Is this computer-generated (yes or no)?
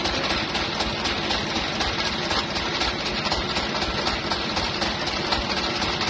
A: no